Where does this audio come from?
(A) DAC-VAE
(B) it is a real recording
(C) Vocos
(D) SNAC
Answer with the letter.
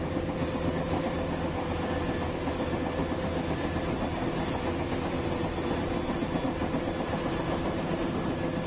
B